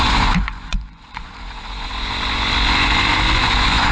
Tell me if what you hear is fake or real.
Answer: fake